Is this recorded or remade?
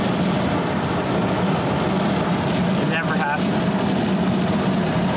recorded